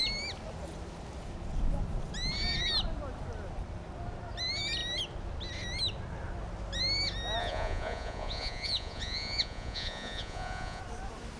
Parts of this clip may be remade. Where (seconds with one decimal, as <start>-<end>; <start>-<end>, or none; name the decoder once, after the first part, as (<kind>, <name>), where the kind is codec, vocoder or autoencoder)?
7.4-10.8 (vocoder, Vocos)